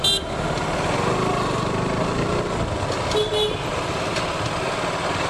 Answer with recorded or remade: recorded